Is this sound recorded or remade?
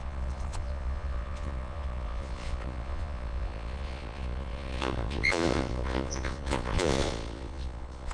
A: remade